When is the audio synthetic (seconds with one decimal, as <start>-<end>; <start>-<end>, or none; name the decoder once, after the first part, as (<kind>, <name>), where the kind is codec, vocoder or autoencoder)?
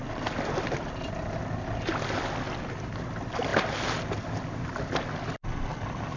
none